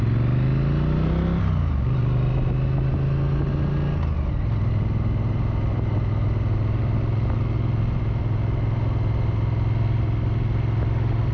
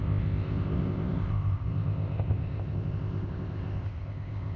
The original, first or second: first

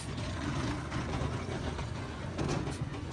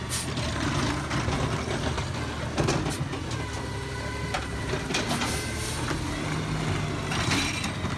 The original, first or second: second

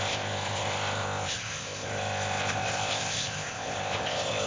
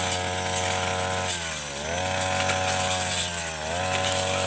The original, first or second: second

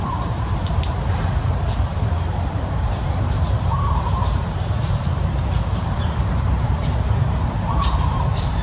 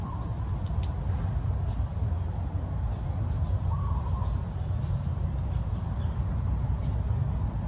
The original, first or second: second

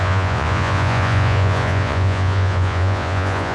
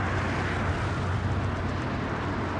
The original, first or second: second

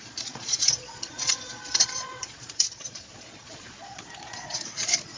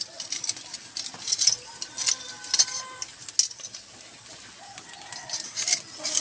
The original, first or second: second